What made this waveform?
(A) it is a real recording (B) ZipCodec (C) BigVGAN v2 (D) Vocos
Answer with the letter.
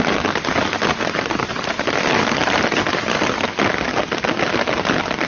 A